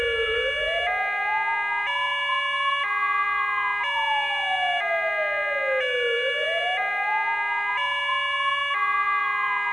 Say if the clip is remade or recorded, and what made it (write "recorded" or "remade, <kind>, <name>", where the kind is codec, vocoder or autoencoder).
recorded